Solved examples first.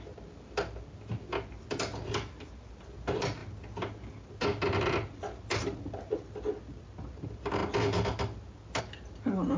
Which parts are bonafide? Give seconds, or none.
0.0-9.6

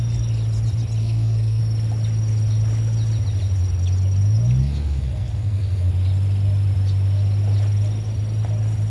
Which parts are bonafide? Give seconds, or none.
0.0-1.0; 1.6-4.6; 5.9-8.9

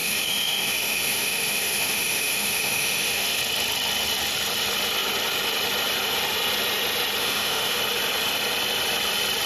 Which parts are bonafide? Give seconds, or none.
3.4-7.2; 7.8-9.5

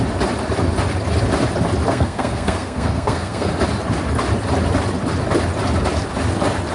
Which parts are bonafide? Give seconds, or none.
0.0-1.9; 3.5-6.7

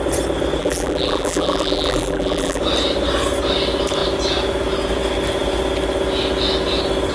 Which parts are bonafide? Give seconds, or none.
0.0-0.6; 2.6-7.1